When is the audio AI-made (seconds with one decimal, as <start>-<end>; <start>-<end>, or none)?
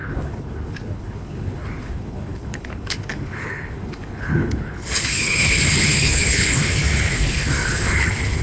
0.0-8.4